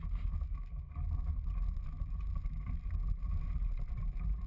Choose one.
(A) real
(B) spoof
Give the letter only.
A